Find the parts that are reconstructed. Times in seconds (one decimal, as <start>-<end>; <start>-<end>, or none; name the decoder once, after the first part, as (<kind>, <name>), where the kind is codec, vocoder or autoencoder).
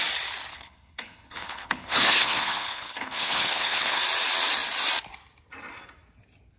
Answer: 0.5-4.0 (codec, HILCodec)